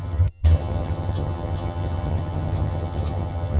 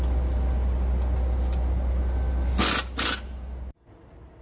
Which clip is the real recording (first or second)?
second